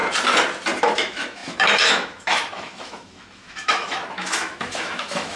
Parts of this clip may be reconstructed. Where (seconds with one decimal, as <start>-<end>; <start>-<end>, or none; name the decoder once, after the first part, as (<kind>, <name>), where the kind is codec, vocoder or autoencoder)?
0.8-5.4 (autoencoder, DAC-VAE)